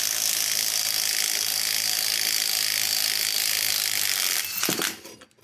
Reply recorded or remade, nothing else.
recorded